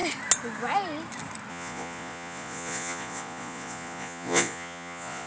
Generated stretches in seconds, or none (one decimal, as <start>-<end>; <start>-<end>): 1.5-5.3